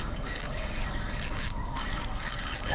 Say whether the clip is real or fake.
fake